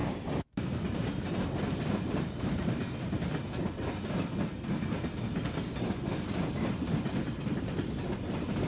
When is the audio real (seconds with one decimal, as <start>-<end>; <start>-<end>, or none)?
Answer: 3.6-8.7